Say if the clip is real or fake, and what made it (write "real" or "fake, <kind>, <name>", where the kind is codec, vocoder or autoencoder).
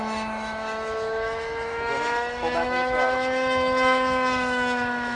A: fake, autoencoder, DAC-VAE